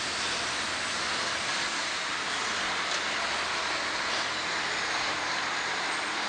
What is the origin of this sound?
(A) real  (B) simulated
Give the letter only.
A